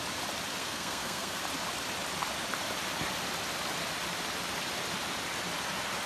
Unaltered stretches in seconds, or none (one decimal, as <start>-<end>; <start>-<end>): 0.0-0.6; 1.4-6.1